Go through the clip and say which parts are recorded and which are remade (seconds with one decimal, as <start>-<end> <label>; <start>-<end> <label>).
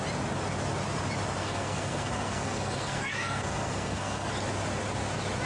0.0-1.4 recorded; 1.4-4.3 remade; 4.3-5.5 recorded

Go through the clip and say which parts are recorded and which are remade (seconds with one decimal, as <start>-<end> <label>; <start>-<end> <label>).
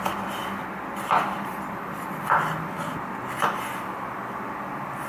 0.0-5.1 recorded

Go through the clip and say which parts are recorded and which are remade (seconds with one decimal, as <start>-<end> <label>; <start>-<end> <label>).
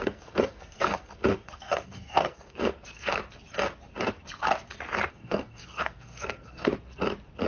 0.0-3.2 remade; 3.2-5.1 recorded; 5.1-6.7 remade; 6.7-7.5 recorded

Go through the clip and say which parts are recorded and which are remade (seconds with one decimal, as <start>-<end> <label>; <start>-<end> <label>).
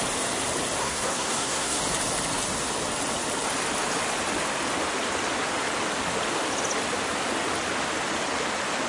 0.0-0.8 recorded; 0.8-1.8 remade; 1.8-8.9 recorded